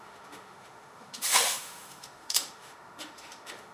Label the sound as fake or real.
fake